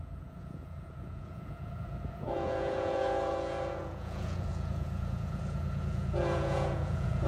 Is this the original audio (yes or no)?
no